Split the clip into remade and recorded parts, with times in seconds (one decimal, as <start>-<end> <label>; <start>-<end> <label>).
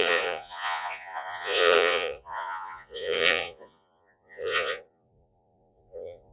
0.0-6.3 remade